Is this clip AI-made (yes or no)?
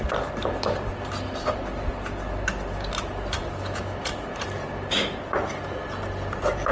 no